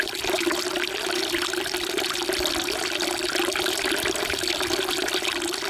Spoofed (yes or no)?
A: no